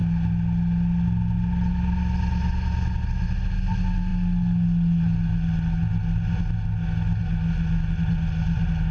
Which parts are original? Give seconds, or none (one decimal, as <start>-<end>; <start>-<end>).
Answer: 0.0-8.9